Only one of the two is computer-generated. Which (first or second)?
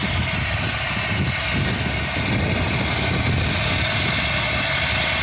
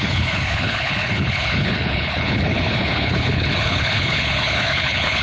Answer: second